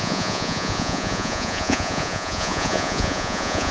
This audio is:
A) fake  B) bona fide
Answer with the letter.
A